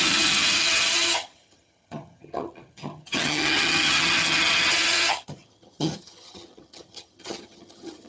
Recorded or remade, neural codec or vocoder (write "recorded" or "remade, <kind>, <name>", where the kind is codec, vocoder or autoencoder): remade, vocoder, HiFi-GAN